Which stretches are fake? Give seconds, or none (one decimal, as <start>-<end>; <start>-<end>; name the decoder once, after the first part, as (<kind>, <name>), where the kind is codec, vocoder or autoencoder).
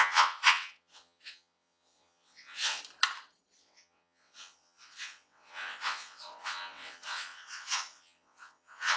0.0-2.8 (vocoder, WaveNeXt); 3.6-9.0